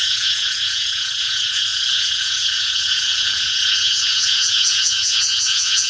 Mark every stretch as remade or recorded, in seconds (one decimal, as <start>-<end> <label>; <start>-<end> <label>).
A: 0.0-5.9 remade